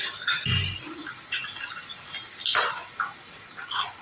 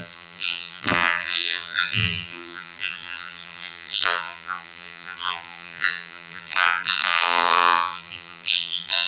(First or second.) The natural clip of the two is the first